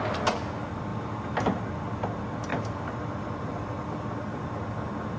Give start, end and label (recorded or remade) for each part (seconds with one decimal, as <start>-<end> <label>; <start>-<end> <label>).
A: 0.0-0.9 recorded; 0.9-1.6 remade; 1.6-2.5 recorded; 2.5-4.1 remade; 4.1-5.2 recorded